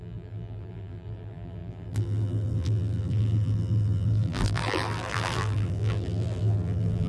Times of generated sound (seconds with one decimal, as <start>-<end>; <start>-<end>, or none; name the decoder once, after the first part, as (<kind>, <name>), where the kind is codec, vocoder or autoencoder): 0.0-7.1 (vocoder, BigVGAN v2)